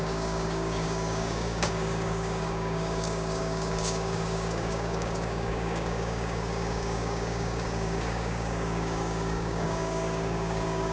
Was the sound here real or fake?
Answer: fake